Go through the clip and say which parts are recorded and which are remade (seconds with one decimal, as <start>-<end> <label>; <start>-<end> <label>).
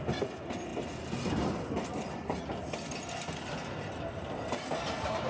0.0-5.3 recorded